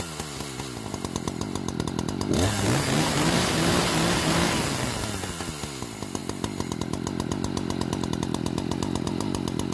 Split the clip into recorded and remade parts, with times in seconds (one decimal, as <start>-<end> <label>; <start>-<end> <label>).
0.0-9.7 recorded